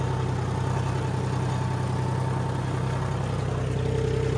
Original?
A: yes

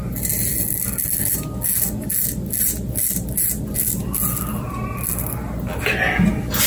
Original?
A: yes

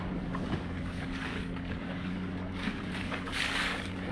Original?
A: no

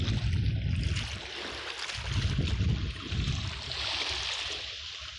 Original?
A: yes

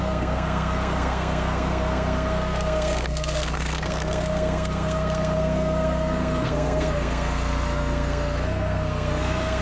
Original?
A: no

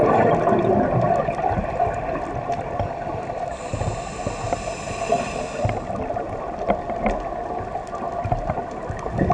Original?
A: yes